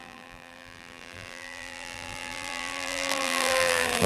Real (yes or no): no